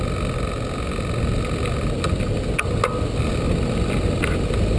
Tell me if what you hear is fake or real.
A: real